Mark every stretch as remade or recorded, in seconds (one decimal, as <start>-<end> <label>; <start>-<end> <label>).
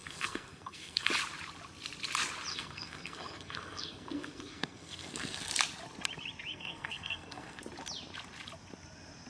0.0-1.1 remade; 1.1-2.5 recorded; 2.5-5.5 remade; 5.5-6.5 recorded; 6.5-7.6 remade; 7.6-9.3 recorded